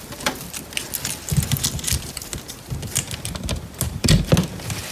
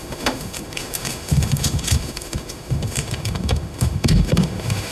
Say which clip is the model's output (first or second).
second